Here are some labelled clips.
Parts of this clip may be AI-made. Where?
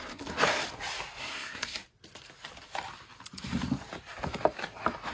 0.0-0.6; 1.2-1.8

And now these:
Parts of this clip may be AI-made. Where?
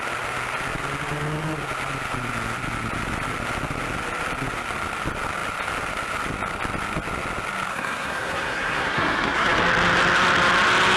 7.7-9.6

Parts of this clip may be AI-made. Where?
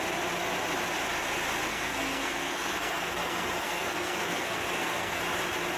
1.7-5.2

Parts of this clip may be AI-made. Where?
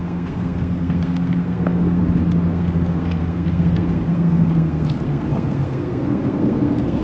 0.0-2.0; 2.5-7.0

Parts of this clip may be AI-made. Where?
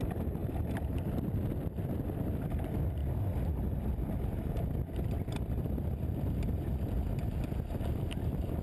none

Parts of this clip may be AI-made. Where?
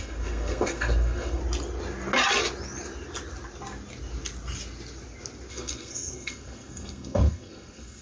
0.0-1.4; 5.5-8.0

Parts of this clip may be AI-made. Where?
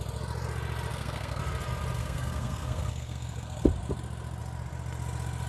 0.9-1.4; 2.0-3.6